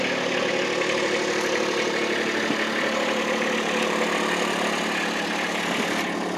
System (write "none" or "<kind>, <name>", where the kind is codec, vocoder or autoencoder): none